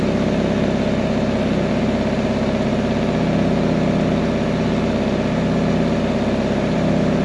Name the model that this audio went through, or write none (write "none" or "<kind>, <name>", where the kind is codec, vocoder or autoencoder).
none